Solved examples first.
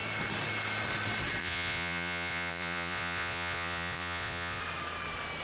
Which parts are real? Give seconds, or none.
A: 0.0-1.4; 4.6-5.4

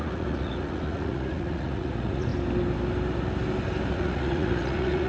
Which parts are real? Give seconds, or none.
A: 2.3-3.9

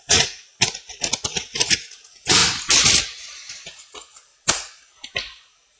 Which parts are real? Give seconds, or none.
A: 2.4-3.0; 4.3-5.8

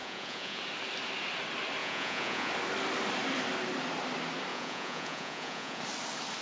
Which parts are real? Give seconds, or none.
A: 0.6-1.8; 2.5-4.5; 5.8-6.4

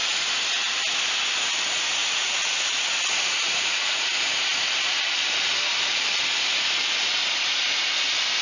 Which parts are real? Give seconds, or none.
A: 0.0-2.0; 4.6-8.4